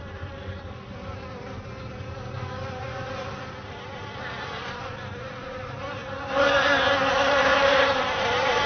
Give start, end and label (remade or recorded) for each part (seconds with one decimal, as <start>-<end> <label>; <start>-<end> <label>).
0.0-6.0 remade; 6.0-7.3 recorded; 7.3-8.7 remade